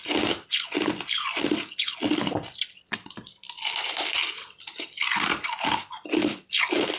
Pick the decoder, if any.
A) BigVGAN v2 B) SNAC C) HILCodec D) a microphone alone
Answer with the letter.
D